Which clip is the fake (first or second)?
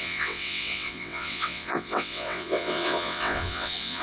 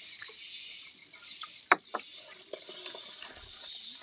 first